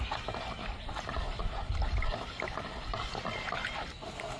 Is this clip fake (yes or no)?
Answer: no